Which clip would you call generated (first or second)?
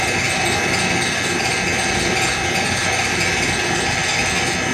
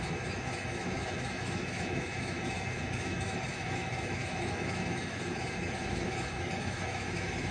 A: second